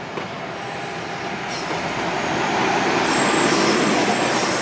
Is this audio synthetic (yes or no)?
no